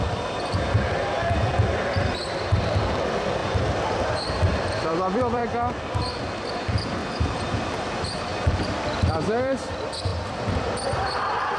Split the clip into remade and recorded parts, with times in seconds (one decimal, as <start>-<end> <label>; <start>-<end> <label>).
0.0-5.4 remade; 5.4-5.9 recorded; 5.9-10.1 remade; 10.1-11.0 recorded; 11.0-11.6 remade